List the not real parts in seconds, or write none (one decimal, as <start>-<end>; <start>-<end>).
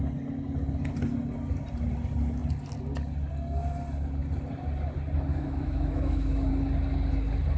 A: 5.3-6.5